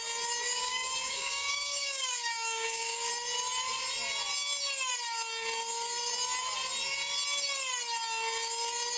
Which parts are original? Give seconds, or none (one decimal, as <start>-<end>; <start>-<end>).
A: 0.0-0.5; 3.1-9.0